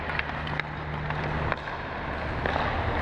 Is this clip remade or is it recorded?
recorded